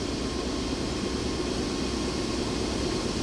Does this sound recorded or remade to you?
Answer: recorded